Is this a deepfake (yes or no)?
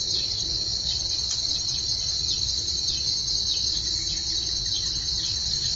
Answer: no